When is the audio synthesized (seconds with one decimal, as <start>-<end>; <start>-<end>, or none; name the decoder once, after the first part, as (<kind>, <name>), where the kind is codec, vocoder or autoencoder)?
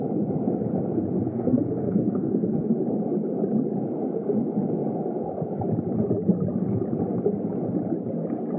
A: 1.2-2.7 (codec, SNAC)